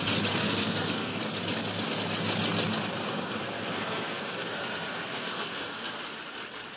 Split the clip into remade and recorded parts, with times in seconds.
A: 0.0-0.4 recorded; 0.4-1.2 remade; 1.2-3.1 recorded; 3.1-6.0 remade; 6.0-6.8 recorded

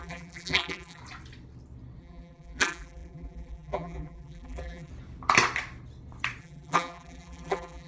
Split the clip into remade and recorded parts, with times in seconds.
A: 0.0-1.0 remade; 1.0-2.0 recorded; 2.0-4.9 remade; 4.9-6.4 recorded; 6.4-7.9 remade